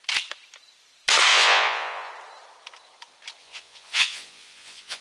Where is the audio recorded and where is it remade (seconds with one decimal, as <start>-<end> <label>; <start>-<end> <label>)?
0.0-1.3 recorded; 1.3-2.1 remade; 2.1-3.4 recorded; 3.4-5.0 remade